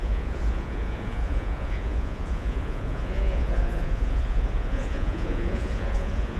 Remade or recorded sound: remade